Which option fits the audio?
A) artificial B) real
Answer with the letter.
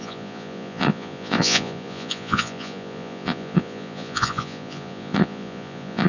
A